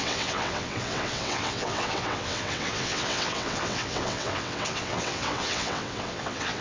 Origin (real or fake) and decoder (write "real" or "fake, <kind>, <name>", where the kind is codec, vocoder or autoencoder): fake, vocoder, WaveNeXt